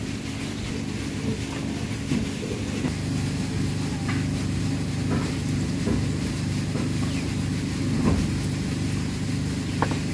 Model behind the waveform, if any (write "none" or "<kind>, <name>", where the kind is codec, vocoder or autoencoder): none